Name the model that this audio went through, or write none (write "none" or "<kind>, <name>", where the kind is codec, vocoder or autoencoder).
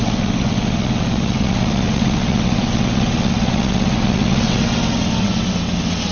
vocoder, WaveNeXt